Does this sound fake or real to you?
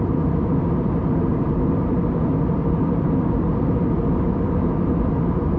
fake